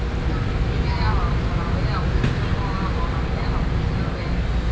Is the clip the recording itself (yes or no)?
yes